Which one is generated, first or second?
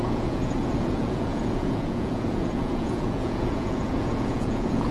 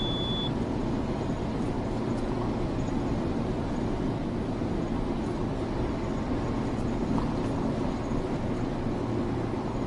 first